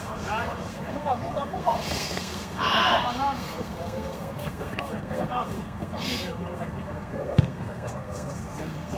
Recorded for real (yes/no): no